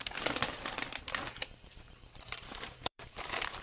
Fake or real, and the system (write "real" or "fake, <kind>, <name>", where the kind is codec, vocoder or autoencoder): fake, vocoder, BigVGAN v2